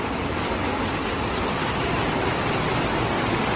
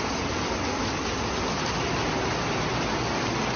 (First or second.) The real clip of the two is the second